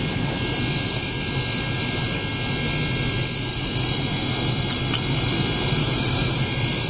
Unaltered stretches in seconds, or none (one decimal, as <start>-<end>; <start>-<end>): 0.0-5.8; 6.4-6.9